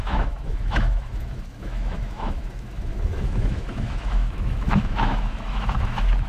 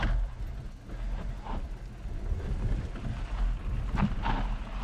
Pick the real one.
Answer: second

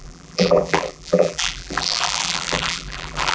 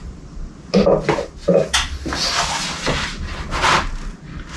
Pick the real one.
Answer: second